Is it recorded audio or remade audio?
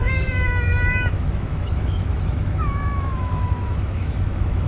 remade